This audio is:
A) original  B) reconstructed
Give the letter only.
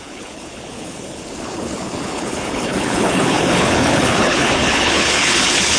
B